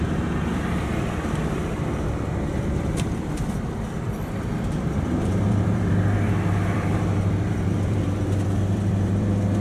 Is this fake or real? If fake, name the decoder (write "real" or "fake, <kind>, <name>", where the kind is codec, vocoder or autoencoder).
fake, vocoder, BigVGAN v2